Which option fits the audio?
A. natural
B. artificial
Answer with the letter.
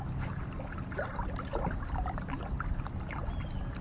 A